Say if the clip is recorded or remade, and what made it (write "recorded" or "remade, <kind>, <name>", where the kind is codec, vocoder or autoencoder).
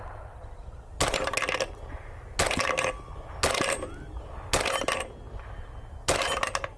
recorded